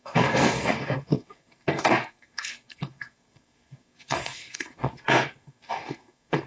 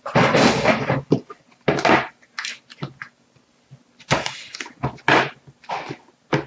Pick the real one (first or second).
second